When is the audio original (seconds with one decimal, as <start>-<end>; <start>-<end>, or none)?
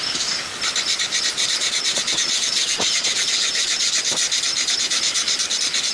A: 0.0-1.3; 4.0-5.9